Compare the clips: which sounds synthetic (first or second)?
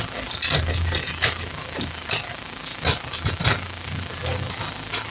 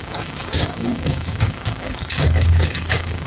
second